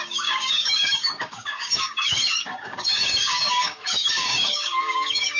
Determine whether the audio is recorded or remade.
remade